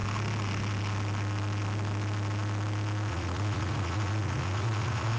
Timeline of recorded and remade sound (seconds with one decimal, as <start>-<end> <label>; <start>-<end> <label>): 0.0-3.1 recorded; 3.1-5.2 remade